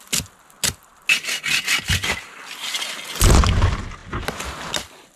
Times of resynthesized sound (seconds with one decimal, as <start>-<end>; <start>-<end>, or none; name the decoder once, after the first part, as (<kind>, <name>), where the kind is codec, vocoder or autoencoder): none